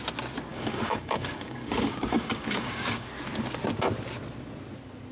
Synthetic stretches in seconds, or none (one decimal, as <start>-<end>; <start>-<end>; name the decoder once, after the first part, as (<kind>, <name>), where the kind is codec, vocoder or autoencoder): 0.5-3.1 (codec, DAC)